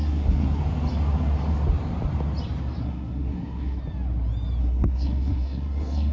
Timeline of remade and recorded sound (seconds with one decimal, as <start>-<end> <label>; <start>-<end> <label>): 0.0-0.6 remade; 0.6-2.8 recorded; 2.8-3.8 remade; 3.8-4.6 recorded; 4.6-6.1 remade